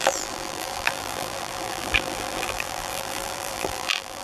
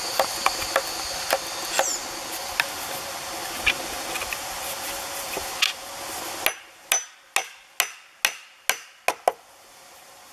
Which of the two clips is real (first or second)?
second